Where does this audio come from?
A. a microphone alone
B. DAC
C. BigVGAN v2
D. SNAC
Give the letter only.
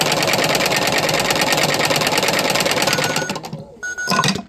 A